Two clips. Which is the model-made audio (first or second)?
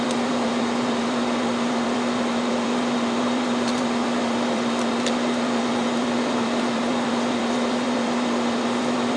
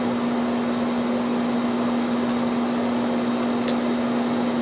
first